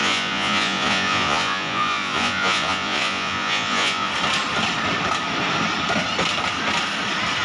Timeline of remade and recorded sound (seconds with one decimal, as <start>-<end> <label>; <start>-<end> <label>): 0.0-4.1 remade; 4.1-7.4 recorded